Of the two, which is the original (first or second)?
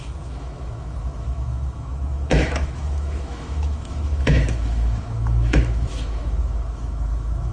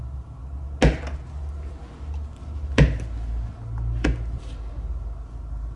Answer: second